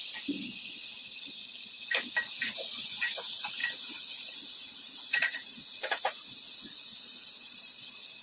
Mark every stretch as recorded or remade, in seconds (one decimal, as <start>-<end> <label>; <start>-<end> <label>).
0.0-3.6 recorded; 3.6-7.2 remade; 7.2-8.2 recorded